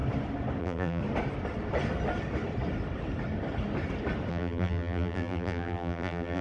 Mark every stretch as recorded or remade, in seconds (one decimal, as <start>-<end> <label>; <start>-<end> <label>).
0.0-0.6 recorded; 0.6-1.0 remade; 1.0-4.3 recorded; 4.3-6.4 remade